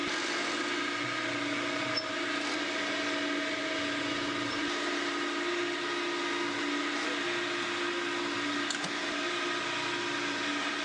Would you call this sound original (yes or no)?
yes